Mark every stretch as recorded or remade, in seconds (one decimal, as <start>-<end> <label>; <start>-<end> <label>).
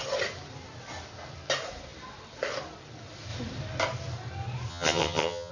0.0-4.7 recorded; 4.7-5.5 remade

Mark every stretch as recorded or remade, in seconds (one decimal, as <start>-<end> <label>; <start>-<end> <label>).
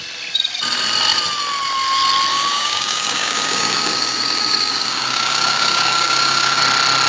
0.0-2.3 recorded; 2.3-6.6 remade; 6.6-7.1 recorded